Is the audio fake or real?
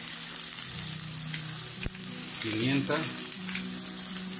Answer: real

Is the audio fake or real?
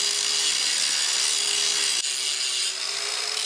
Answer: real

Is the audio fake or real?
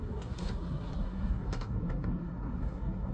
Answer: fake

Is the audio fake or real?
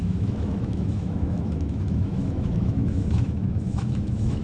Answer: fake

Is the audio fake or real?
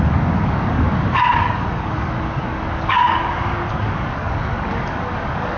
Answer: fake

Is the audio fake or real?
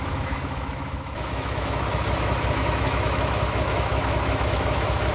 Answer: fake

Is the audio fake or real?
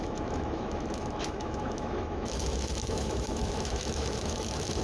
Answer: fake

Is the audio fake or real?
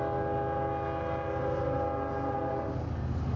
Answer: real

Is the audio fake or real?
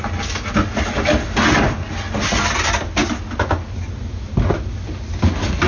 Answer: real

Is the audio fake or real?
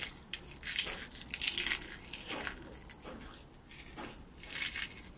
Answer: real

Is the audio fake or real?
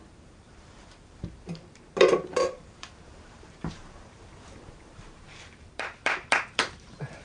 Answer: fake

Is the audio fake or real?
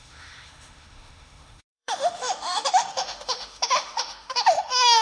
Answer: fake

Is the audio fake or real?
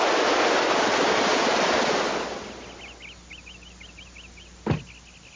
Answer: real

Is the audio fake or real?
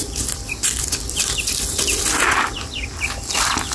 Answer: real